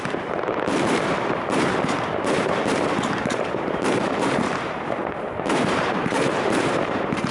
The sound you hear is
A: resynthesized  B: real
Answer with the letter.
A